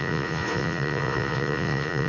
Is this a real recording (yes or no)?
no